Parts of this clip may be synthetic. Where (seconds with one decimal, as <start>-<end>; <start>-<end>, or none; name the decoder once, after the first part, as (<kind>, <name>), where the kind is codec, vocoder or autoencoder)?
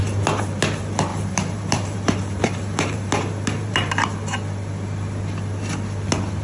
1.1-3.9 (vocoder, BigVGAN v2)